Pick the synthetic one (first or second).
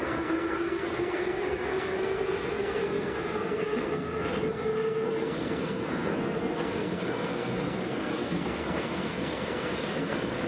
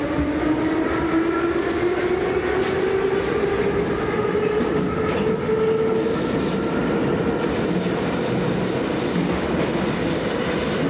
first